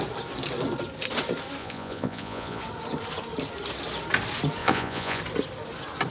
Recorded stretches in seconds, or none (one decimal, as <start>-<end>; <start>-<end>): 0.0-1.6; 2.6-4.6; 5.2-6.1